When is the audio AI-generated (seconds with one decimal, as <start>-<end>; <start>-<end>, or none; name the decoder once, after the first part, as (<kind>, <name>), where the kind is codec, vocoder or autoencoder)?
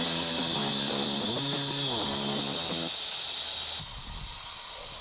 3.9-5.0 (vocoder, BigVGAN v2)